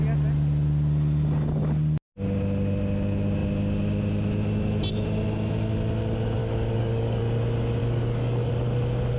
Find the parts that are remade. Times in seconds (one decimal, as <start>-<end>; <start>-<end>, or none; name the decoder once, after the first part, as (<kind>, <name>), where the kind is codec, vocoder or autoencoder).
6.4-7.2 (codec, DAC); 7.8-8.5